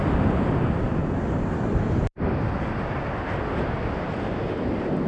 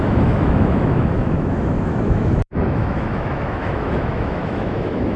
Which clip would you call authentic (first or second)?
first